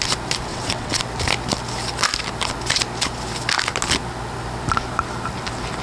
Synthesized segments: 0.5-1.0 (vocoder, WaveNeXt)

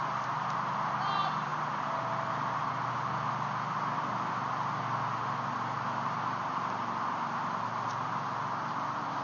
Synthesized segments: none

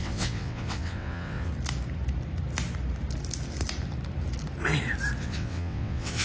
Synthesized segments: 0.0-1.5 (vocoder, WaveNeXt); 5.2-6.2

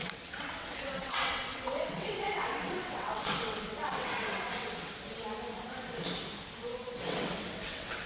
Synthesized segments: 0.0-4.9 (vocoder, WaveNeXt); 6.7-8.1

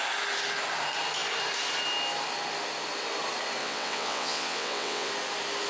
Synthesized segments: 3.6-5.1 (vocoder, WaveNeXt)

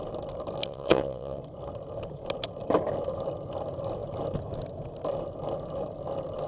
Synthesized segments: 0.6-1.4 (vocoder, WaveNeXt)

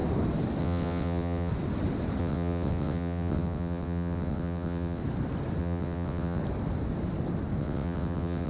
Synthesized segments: 0.6-1.5 (vocoder, WaveNeXt); 2.2-5.0; 5.6-6.4; 7.6-8.5